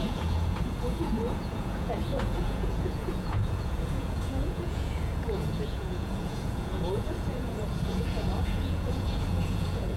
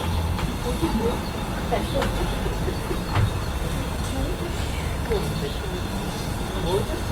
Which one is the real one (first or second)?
second